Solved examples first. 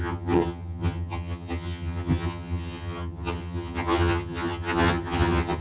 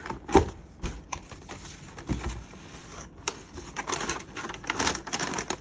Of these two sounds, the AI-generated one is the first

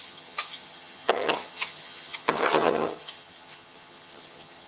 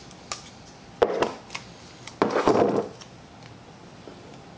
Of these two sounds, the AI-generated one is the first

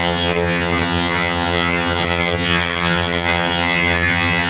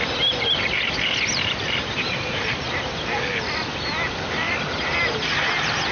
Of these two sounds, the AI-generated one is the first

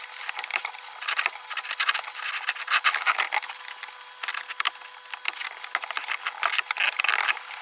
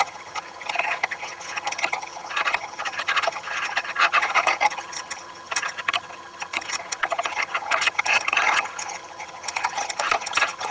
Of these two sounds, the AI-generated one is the second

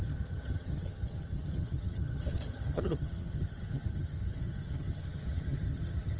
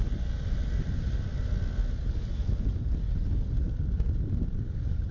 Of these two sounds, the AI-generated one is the first